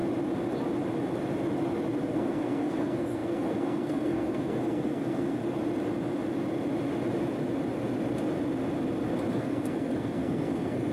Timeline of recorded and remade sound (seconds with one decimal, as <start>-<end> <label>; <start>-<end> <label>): 0.0-2.0 recorded; 2.0-5.4 remade; 5.4-9.3 recorded; 9.3-10.9 remade